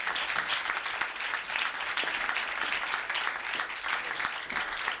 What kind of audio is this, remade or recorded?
recorded